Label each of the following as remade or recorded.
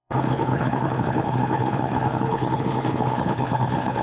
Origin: remade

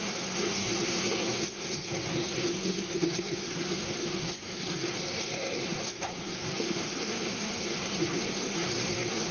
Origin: remade